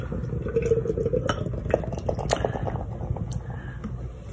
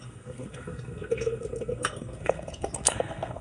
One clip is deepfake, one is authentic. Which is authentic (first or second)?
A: first